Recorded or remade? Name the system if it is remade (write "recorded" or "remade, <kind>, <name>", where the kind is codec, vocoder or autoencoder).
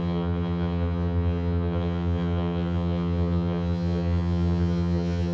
remade, vocoder, HiFi-GAN